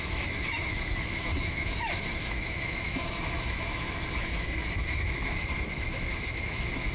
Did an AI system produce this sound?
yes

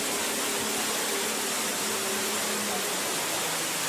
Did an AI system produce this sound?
no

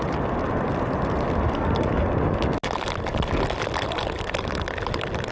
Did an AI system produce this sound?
no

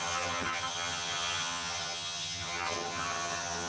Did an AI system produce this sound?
yes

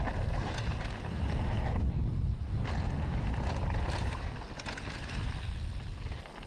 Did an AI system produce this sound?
no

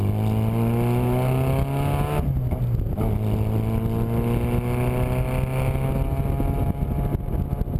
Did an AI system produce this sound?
no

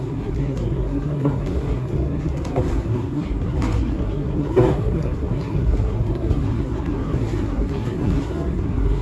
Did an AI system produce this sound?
yes